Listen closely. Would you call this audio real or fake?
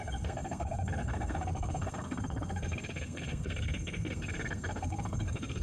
fake